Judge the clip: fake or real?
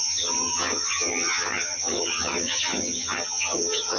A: fake